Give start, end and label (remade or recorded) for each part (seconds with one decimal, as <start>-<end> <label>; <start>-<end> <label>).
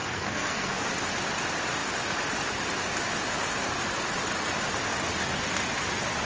0.0-0.9 remade; 0.9-6.3 recorded